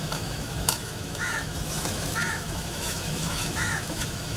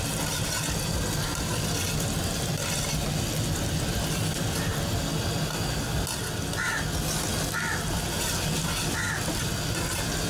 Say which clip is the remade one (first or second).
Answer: first